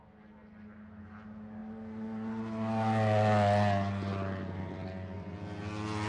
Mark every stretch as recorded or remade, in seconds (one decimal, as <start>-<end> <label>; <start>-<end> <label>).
0.0-6.1 recorded